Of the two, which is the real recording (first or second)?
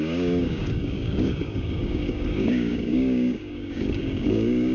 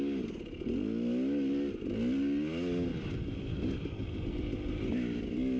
second